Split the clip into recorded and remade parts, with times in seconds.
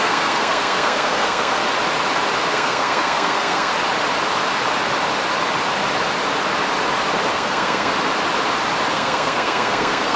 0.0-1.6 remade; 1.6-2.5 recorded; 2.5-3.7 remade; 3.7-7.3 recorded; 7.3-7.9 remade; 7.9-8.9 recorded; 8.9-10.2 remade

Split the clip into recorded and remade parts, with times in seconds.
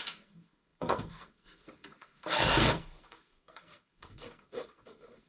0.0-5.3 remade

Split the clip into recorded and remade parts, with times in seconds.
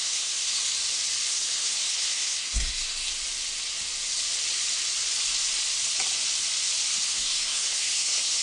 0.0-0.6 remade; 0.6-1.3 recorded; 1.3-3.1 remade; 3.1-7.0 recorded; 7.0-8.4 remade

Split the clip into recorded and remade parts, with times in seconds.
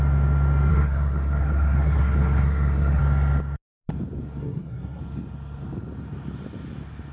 0.0-0.7 recorded; 0.7-3.0 remade; 3.0-4.4 recorded; 4.4-5.0 remade; 5.0-7.1 recorded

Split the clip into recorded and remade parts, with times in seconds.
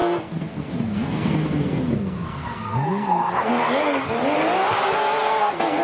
0.0-3.5 remade; 3.5-5.2 recorded; 5.2-5.8 remade